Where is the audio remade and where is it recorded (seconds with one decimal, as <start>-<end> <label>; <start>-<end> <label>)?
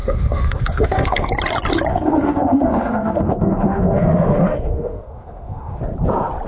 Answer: 0.0-1.3 remade; 1.3-1.9 recorded; 1.9-5.8 remade; 5.8-6.5 recorded